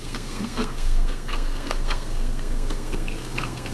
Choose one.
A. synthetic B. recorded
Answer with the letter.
A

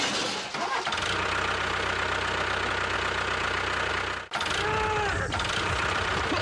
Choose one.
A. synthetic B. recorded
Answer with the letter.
B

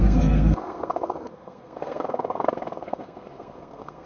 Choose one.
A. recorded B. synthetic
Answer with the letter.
B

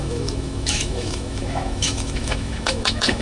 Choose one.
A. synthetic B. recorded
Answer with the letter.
A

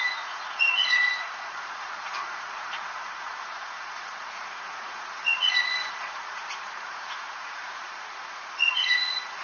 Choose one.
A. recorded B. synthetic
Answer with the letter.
B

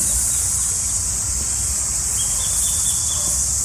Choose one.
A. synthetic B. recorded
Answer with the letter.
B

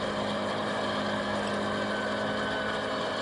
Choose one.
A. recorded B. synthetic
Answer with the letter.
A